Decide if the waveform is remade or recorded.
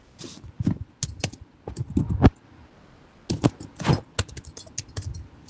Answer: recorded